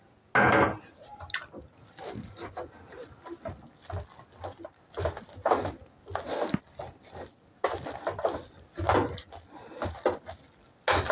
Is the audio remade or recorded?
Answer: recorded